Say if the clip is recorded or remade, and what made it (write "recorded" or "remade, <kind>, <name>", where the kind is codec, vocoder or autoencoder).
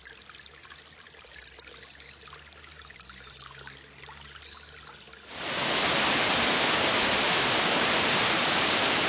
recorded